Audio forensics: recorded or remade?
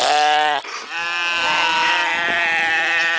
recorded